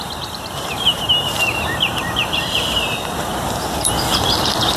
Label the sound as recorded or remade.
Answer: remade